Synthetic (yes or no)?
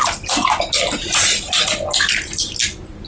no